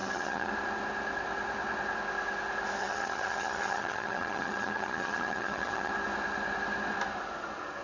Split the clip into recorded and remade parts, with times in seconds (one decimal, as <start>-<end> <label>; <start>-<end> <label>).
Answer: 0.0-0.5 remade; 0.5-2.8 recorded; 2.8-5.9 remade; 5.9-7.8 recorded